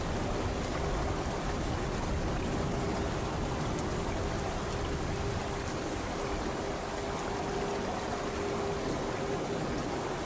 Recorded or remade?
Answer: recorded